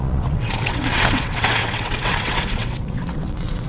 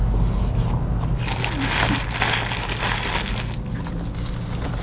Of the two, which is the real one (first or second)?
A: second